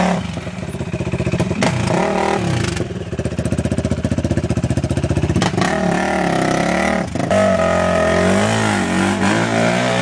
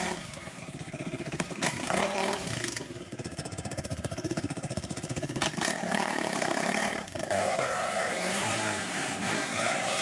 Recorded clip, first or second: first